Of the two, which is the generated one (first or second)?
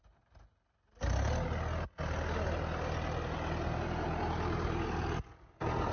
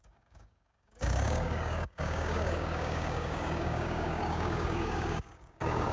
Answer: second